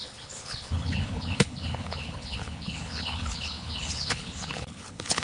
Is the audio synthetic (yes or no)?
yes